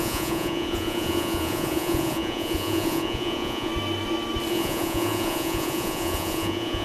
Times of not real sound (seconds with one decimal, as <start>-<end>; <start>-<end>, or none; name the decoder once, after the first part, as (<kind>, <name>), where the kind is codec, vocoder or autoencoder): 0.0-3.7 (vocoder, Vocos); 4.5-6.8